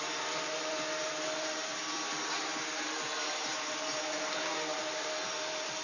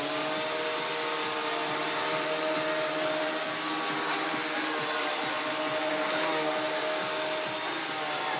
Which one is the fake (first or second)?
first